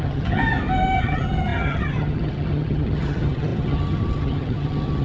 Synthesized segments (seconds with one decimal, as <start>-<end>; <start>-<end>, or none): 0.0-0.4; 1.0-5.0